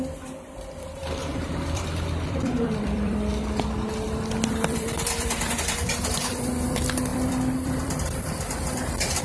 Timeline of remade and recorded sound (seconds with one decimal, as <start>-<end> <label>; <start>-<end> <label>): 0.0-3.3 remade; 3.3-4.5 recorded; 4.5-9.2 remade